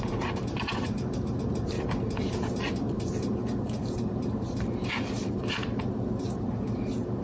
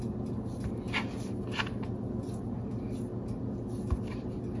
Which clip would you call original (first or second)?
second